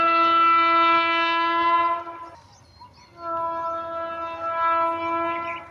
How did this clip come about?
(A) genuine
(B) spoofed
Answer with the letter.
A